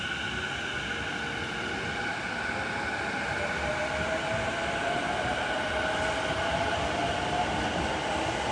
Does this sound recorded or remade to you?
recorded